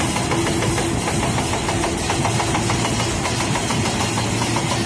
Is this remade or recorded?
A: recorded